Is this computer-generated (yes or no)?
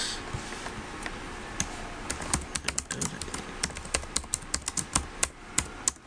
no